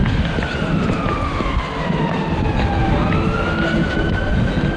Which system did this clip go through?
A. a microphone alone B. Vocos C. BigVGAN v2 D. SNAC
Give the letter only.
A